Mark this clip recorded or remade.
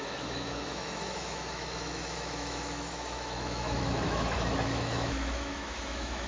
remade